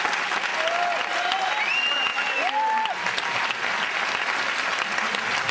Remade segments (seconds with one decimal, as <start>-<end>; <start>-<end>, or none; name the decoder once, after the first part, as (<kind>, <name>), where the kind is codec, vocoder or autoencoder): none